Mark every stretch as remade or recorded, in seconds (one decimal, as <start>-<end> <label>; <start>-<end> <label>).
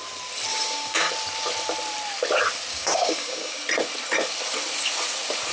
0.0-0.5 recorded; 0.5-1.1 remade; 1.1-2.7 recorded; 2.7-3.6 remade; 3.6-5.5 recorded